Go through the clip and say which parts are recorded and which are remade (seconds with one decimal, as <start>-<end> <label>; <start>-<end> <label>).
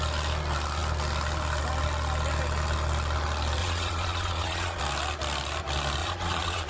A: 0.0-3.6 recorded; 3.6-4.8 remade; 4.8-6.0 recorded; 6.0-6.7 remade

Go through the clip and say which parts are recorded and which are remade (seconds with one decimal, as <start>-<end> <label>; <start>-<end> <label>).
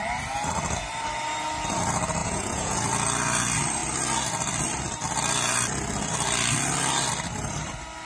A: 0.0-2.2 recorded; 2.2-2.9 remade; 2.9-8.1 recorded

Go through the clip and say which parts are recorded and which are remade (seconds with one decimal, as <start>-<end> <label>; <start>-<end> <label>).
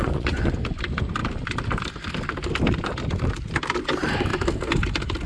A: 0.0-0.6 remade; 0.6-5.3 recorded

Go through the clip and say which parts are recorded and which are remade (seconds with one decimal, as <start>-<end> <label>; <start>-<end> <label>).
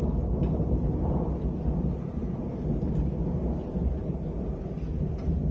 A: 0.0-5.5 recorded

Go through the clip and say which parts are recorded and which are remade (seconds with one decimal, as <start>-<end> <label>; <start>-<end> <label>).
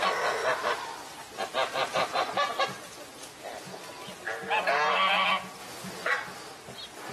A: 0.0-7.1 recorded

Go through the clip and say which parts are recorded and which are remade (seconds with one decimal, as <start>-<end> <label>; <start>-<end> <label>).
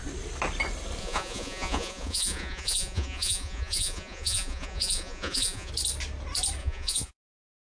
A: 0.0-1.0 recorded; 1.0-5.7 remade; 5.7-6.6 recorded; 6.6-7.1 remade; 7.1-7.8 recorded